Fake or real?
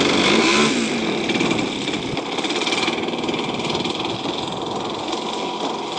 real